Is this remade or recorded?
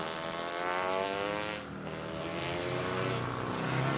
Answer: recorded